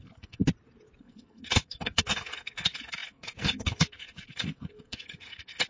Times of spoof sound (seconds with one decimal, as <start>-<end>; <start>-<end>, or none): 0.0-0.4; 1.0-5.7

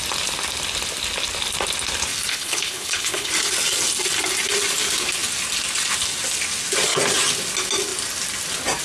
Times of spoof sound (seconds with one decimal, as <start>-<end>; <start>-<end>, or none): 2.3-3.3